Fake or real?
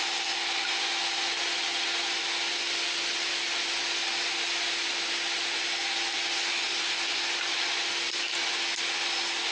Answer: real